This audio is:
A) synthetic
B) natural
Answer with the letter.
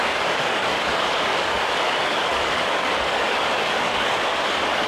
A